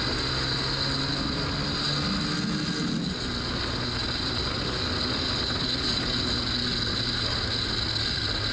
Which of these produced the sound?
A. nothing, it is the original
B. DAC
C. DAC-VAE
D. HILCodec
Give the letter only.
A